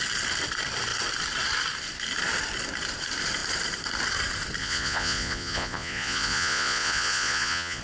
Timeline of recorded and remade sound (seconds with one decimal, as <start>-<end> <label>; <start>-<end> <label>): 0.0-4.6 recorded; 4.6-7.8 remade